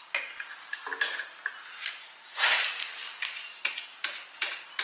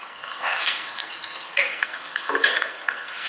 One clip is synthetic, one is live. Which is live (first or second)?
first